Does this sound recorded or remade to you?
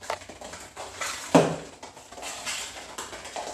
recorded